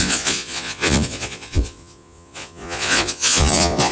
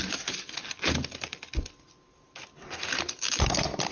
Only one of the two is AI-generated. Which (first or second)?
first